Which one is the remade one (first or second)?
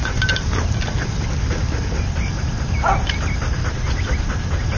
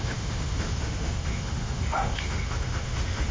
second